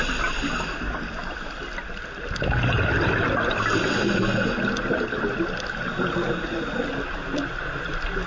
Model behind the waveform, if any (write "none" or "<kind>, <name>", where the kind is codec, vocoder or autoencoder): none